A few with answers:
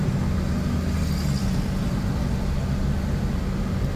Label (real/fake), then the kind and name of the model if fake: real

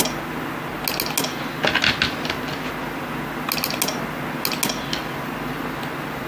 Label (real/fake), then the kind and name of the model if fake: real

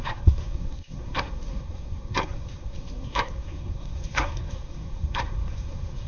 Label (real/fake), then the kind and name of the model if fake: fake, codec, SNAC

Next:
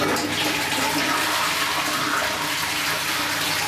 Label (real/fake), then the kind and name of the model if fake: real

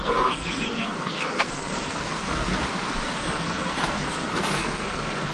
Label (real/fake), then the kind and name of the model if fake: fake, codec, SNAC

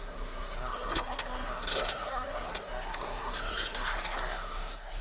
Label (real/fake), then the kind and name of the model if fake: fake, codec, SNAC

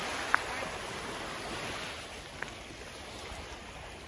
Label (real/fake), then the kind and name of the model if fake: real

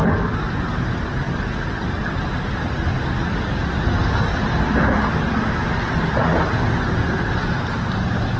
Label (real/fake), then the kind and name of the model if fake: real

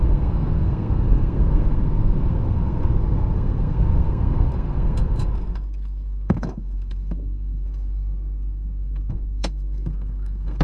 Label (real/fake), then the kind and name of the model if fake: fake, codec, SNAC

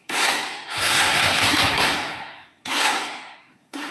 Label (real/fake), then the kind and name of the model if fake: fake, codec, SNAC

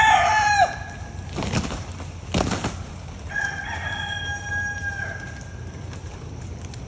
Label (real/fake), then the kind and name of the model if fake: real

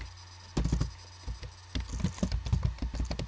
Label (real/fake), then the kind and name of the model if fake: real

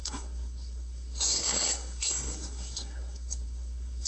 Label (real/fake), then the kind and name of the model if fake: fake, codec, SNAC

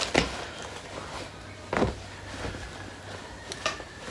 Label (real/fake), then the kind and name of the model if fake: real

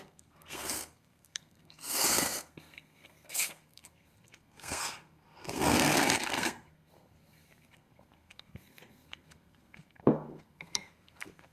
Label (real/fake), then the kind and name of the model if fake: fake, codec, SNAC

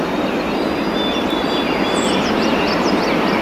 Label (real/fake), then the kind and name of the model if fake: real